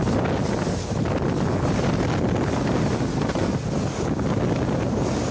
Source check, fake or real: real